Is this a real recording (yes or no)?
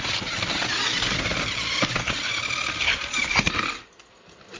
yes